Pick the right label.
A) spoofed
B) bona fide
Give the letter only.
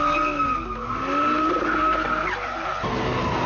B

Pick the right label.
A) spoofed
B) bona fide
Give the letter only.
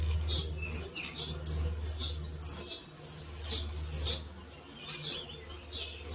B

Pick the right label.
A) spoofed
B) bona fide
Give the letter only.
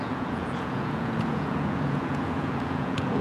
A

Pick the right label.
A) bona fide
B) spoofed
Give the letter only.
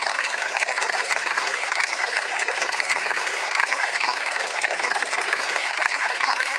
B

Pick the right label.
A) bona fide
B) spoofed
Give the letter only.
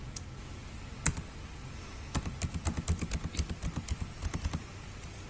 A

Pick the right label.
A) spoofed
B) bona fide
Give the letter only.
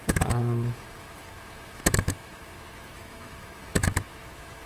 A